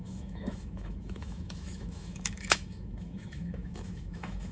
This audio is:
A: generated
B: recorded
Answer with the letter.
A